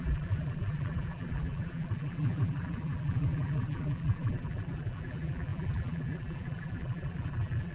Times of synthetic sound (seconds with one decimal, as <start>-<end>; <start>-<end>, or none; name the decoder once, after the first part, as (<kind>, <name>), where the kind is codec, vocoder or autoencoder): 0.0-7.7 (vocoder, BigVGAN v2)